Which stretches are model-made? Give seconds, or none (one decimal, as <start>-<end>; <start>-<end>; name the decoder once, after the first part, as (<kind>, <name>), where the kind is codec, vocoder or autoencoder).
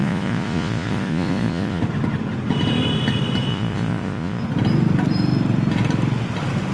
0.0-1.8 (vocoder, Vocos); 3.5-4.4